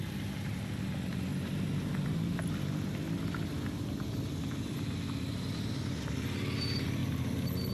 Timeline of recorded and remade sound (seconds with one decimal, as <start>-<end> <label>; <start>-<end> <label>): 0.0-1.3 recorded; 1.3-2.9 remade; 2.9-7.0 recorded; 7.0-7.7 remade